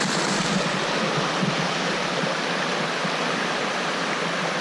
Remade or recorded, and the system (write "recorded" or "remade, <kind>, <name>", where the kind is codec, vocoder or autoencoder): remade, vocoder, BigVGAN v2